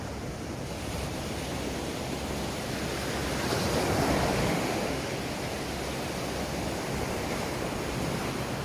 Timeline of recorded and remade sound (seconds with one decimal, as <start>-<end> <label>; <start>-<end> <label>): 0.0-4.4 recorded; 4.4-5.1 remade; 5.1-8.6 recorded